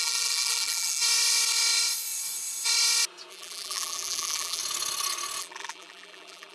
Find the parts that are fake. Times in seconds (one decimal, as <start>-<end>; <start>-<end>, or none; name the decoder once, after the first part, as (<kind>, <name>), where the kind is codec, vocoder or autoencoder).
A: 0.0-1.0 (vocoder, BigVGAN v2); 3.3-4.6; 5.4-6.5